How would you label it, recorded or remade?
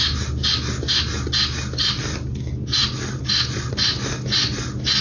recorded